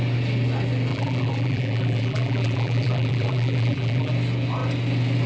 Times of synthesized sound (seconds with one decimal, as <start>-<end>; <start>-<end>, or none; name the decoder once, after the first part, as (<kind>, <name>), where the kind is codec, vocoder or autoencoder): 0.9-4.1 (vocoder, BigVGAN v2)